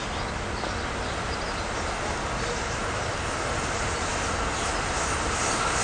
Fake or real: real